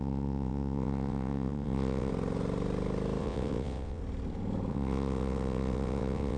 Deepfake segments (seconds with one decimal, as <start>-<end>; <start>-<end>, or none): 0.0-2.1; 3.2-4.0; 4.7-6.4